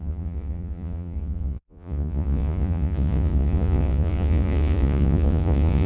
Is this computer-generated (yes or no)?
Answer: yes